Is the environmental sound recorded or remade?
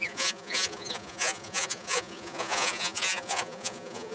remade